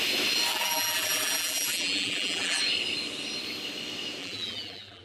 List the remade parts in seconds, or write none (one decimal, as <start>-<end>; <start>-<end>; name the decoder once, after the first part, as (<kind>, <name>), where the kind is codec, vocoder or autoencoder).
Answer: 0.5-2.6 (vocoder, BigVGAN v2); 4.2-5.0